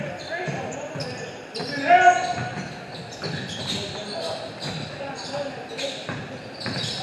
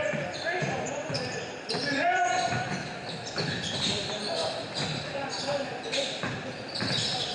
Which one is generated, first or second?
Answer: second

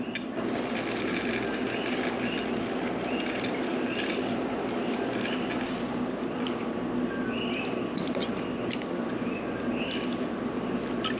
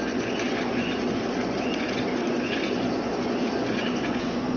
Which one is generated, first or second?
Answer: second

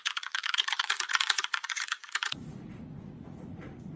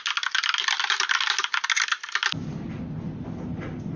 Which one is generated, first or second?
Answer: first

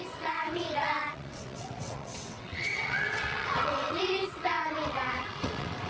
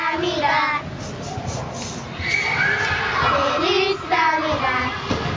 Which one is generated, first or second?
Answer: first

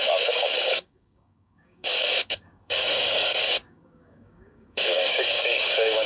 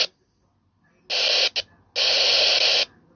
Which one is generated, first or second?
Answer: first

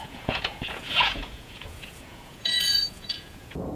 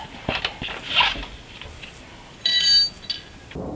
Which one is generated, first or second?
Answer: first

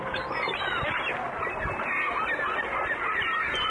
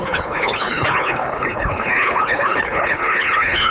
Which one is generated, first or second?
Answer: second